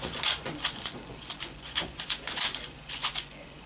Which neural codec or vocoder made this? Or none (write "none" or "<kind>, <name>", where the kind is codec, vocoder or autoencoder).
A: vocoder, Vocos